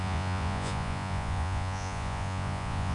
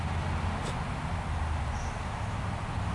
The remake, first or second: first